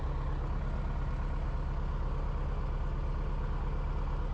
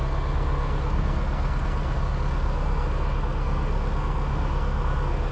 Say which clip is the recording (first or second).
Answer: first